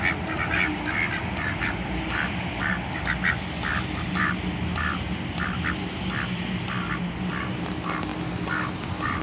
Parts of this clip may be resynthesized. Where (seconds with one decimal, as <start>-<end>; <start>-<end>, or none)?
none